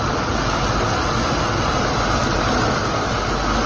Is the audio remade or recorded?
recorded